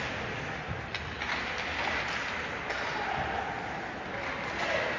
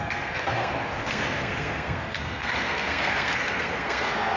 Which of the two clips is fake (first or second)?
second